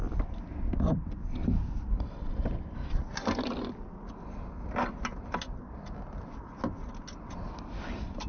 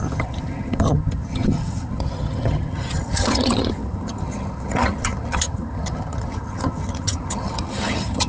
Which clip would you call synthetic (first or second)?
second